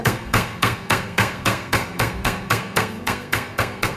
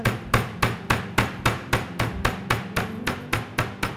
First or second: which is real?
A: second